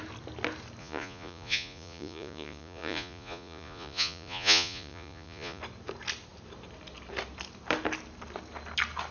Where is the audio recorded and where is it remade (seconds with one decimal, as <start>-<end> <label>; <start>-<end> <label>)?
0.0-0.8 recorded; 0.8-5.6 remade; 5.6-9.1 recorded